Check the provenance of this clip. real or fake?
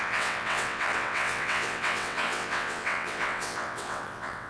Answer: fake